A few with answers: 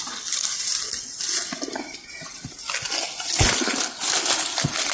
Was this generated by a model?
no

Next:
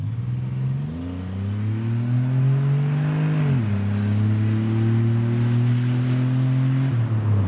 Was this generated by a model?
no